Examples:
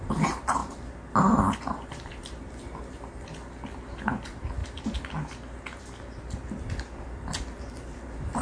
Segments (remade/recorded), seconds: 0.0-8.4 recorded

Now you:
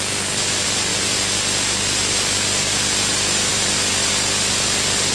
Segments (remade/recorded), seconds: 0.0-5.1 recorded